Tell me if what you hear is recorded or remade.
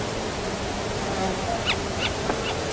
recorded